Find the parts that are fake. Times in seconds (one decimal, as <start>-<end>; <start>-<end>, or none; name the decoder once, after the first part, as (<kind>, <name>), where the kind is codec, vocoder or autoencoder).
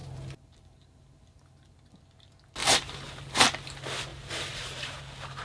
0.0-1.8 (vocoder, BigVGAN v2); 2.6-3.2; 4.1-5.0